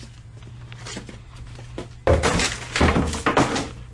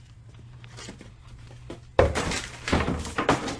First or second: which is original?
first